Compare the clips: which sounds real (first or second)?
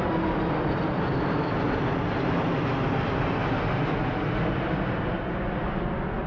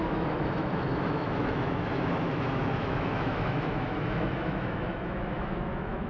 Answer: first